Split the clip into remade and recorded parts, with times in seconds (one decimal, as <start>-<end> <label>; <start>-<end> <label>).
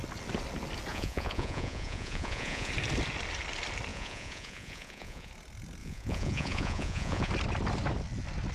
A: 0.0-0.9 recorded; 0.9-2.7 remade; 2.7-3.9 recorded; 3.9-5.3 remade; 5.3-5.8 recorded; 5.8-7.3 remade; 7.3-8.5 recorded